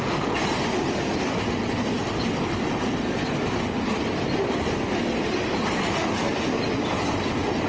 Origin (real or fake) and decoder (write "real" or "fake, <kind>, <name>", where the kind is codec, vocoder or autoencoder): real